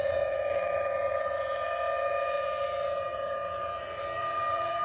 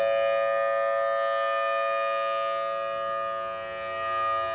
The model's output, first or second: first